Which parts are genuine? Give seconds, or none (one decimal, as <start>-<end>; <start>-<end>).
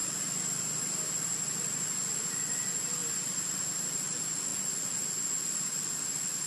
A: 1.1-3.0; 3.6-6.5